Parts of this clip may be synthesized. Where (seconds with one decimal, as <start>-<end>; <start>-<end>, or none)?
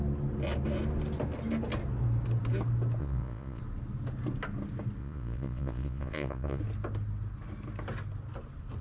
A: 3.0-3.6; 5.0-6.6